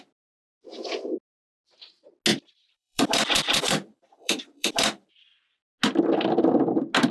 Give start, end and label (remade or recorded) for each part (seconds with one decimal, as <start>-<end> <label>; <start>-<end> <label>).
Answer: 0.0-2.3 recorded; 2.3-5.1 remade; 5.1-7.1 recorded